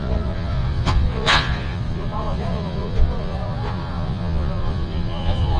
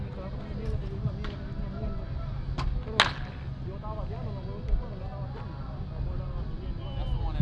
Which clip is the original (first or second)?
second